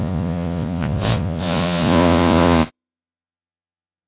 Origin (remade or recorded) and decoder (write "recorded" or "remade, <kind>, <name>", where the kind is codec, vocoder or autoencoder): remade, vocoder, Vocos